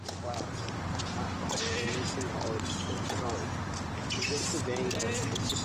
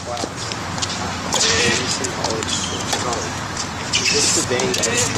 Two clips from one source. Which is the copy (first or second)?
second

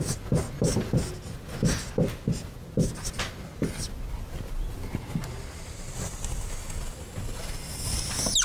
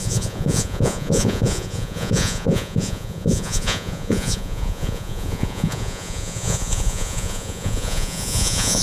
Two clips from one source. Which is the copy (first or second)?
second